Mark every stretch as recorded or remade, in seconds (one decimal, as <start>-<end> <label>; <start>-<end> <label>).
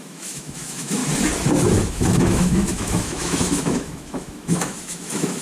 0.0-1.0 remade; 1.0-1.9 recorded; 1.9-5.4 remade